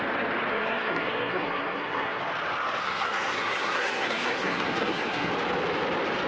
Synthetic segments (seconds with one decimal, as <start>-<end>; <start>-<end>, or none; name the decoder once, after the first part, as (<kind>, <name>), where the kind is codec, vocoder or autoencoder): 0.5-2.2 (codec, SNAC); 2.8-5.3